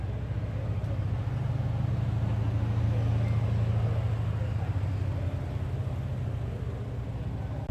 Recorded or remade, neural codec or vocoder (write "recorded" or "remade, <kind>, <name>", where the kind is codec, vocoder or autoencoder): recorded